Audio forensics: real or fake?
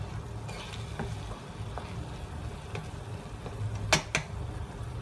real